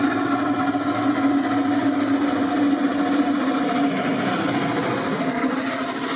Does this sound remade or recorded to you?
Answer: recorded